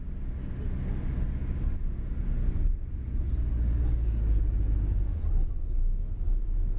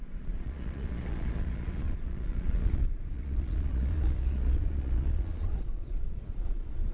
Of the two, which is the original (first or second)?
first